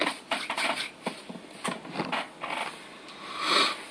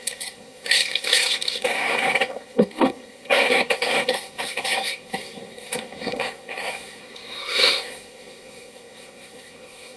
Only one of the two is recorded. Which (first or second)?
first